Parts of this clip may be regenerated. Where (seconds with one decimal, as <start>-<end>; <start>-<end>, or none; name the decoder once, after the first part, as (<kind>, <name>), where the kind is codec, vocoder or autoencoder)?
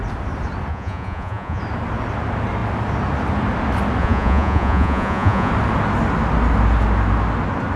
0.7-1.6 (vocoder, Vocos); 4.0-5.5